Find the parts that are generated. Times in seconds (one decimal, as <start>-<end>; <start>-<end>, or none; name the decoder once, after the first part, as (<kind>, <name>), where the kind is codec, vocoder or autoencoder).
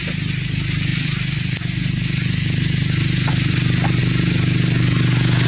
none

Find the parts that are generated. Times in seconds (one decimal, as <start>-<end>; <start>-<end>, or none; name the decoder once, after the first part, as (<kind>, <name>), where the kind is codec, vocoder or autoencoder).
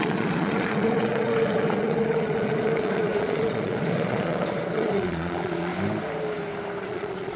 0.0-5.7 (vocoder, Vocos); 6.8-7.4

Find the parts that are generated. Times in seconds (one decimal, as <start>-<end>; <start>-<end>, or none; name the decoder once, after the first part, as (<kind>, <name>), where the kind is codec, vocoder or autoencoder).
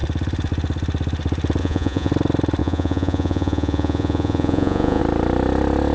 1.6-2.1 (vocoder, Vocos); 2.6-5.0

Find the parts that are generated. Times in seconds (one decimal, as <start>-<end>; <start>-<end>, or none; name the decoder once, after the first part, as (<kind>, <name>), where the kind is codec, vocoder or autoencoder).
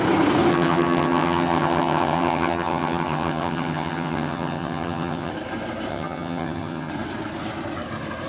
0.5-5.3 (vocoder, HiFi-GAN); 5.9-6.9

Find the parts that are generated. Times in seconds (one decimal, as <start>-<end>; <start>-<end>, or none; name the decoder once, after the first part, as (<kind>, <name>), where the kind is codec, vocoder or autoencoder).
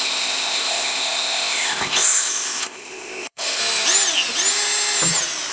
0.0-3.6 (codec, ZipCodec)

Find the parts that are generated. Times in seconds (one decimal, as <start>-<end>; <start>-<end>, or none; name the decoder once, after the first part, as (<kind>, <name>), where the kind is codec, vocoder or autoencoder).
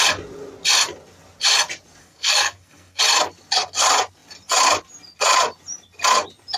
2.0-3.0 (codec, SNAC)